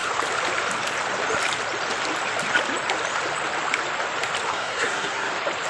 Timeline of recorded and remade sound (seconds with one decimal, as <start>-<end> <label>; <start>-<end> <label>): 0.0-4.5 recorded; 4.5-5.3 remade; 5.3-5.7 recorded